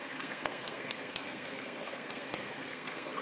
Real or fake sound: fake